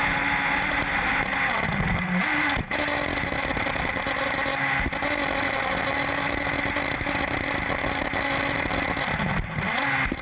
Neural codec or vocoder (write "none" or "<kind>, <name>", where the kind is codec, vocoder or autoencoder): none